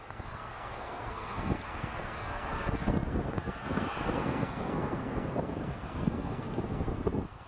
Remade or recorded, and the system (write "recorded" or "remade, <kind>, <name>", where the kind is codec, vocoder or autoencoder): remade, codec, SNAC